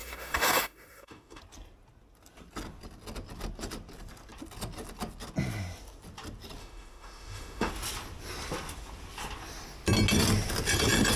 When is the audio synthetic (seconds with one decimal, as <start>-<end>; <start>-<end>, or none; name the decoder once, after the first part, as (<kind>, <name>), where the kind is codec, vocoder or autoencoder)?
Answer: 0.0-1.4 (autoencoder, DAC-VAE); 6.6-7.7